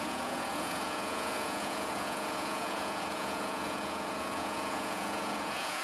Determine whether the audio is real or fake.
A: fake